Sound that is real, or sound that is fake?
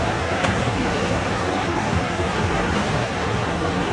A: fake